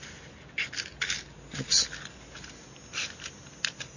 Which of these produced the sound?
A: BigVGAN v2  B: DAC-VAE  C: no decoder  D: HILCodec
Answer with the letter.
C